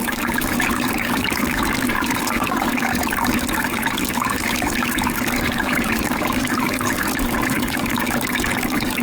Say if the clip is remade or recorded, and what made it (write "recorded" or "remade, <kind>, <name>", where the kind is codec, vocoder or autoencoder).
remade, codec, DAC